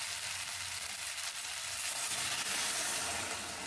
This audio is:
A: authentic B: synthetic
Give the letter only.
A